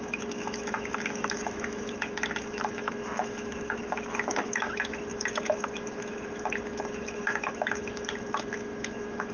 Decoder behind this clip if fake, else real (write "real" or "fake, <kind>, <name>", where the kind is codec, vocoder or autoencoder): fake, autoencoder, DAC-VAE